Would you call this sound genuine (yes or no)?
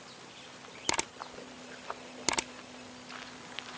yes